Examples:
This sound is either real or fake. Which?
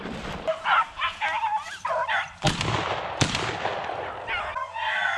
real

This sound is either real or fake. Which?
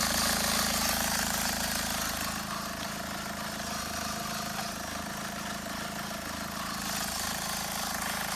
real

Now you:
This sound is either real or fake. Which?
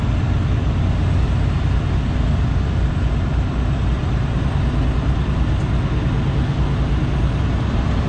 real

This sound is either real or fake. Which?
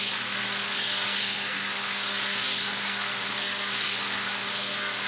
fake